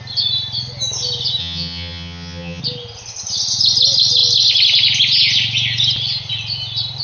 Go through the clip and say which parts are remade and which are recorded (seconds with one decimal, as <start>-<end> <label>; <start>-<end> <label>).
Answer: 0.0-1.4 recorded; 1.4-2.6 remade; 2.6-7.0 recorded

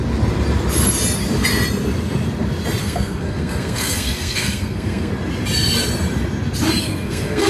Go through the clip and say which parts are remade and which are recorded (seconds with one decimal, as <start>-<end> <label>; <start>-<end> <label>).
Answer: 0.0-2.8 recorded; 2.8-5.1 remade; 5.1-6.8 recorded; 6.8-7.5 remade

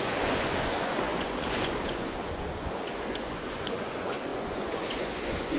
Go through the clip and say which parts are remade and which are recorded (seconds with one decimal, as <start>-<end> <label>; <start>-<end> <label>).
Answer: 0.0-5.6 remade